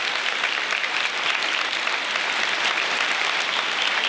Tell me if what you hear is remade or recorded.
recorded